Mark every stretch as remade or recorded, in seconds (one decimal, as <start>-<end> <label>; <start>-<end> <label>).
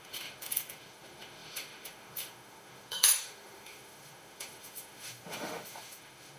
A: 0.0-6.4 remade